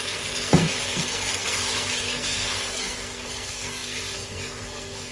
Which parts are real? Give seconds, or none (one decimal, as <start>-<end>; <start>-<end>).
none